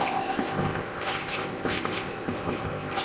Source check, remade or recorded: remade